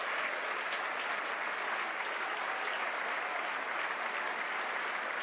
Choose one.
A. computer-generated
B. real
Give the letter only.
B